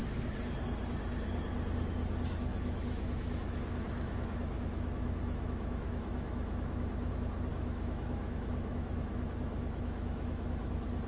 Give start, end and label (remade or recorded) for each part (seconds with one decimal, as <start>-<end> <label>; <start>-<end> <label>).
0.0-2.5 recorded; 2.5-7.1 remade; 7.1-7.5 recorded; 7.5-10.7 remade; 10.7-11.1 recorded